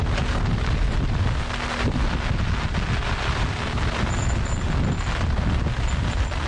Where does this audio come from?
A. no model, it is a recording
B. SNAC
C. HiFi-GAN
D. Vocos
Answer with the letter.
A